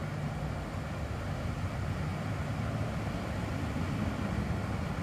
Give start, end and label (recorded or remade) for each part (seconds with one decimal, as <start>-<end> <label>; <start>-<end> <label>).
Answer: 0.0-2.1 recorded; 2.1-2.9 remade; 2.9-5.0 recorded